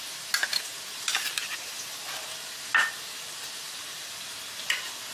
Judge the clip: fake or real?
real